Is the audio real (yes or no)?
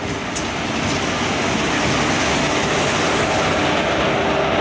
yes